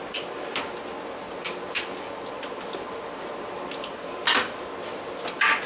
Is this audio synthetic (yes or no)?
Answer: no